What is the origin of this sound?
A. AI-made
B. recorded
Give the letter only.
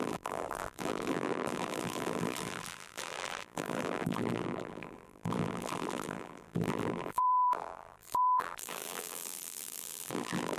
A